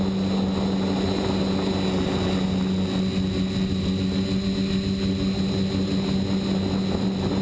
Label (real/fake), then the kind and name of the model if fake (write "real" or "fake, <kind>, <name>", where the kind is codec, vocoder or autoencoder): real